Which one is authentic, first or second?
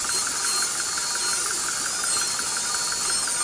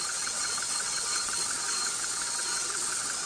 first